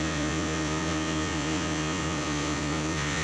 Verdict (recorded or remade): remade